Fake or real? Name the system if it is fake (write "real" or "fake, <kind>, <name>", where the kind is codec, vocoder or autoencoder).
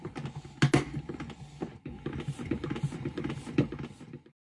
real